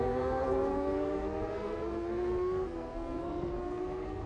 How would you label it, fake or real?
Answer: fake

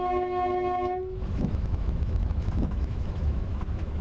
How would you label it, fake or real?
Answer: fake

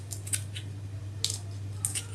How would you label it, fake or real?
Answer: real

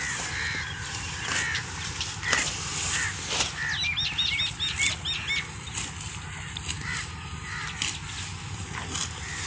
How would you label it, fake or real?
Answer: real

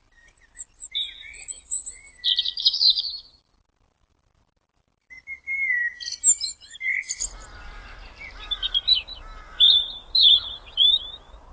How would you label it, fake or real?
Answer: real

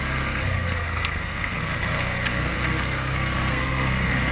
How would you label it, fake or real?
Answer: fake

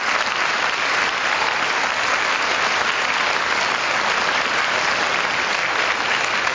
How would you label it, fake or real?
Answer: real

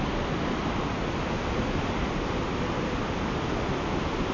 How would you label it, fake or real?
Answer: real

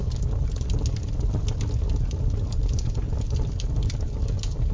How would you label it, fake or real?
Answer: real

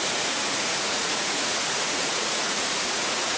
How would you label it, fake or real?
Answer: fake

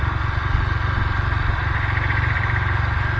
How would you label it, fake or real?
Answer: real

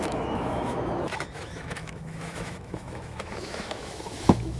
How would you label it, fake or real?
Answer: fake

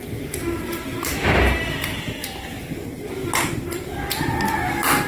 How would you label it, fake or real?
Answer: real